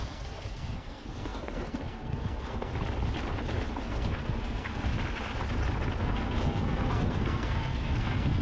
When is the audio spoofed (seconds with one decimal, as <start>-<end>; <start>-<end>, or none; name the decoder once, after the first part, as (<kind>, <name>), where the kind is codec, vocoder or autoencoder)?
0.0-2.7 (codec, SNAC); 3.8-4.9; 6.0-8.4